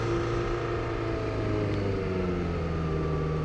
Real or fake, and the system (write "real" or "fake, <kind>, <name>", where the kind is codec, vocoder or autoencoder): real